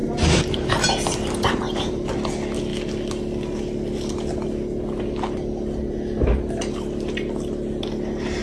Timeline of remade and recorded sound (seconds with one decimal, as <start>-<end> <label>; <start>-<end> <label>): 0.0-2.1 remade; 2.1-8.4 recorded